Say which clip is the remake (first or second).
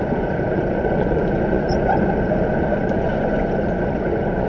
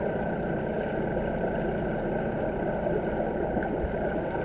first